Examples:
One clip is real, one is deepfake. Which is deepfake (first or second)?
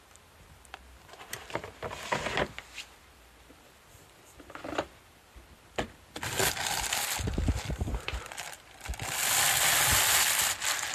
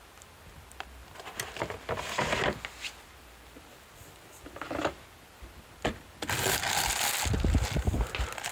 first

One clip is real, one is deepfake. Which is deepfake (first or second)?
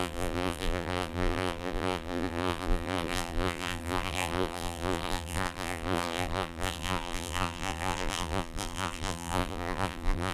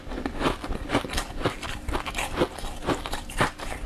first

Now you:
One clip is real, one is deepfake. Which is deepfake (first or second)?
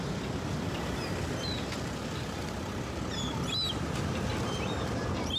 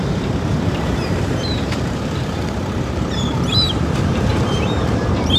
second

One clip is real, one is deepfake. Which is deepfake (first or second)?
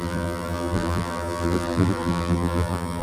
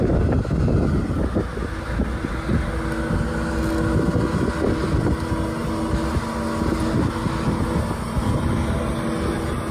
first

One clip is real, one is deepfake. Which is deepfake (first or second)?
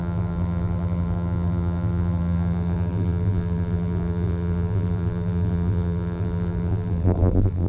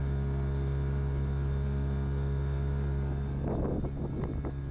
first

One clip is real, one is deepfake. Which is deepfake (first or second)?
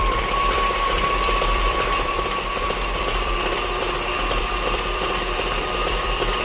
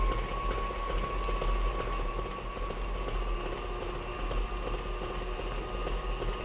first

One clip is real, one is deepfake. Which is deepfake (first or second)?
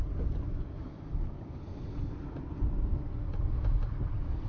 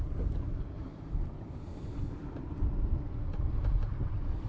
second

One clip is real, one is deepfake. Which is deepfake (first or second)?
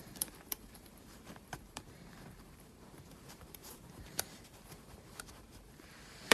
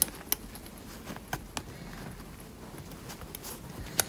first